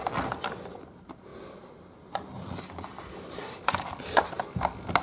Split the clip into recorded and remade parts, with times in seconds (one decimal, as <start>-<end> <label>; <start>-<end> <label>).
0.0-5.0 recorded